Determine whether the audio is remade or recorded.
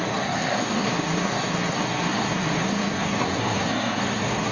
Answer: remade